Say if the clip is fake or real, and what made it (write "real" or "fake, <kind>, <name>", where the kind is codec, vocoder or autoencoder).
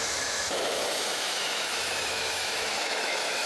fake, autoencoder, DAC-VAE